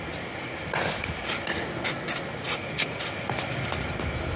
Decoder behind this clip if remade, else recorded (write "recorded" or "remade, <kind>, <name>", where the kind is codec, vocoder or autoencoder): recorded